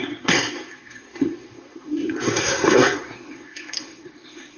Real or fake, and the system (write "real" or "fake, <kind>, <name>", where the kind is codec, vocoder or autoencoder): fake, codec, SNAC